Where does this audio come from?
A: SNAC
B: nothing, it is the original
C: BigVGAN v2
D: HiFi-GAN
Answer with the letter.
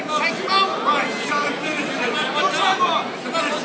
B